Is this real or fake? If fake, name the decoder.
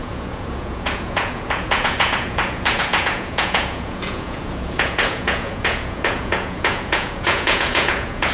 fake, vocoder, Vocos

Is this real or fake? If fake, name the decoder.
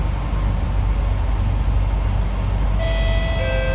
real